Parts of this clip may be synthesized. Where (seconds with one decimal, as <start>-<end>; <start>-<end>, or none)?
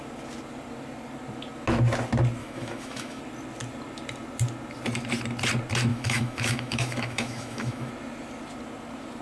2.4-3.2; 5.9-7.9